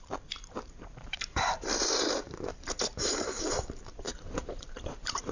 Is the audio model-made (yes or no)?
yes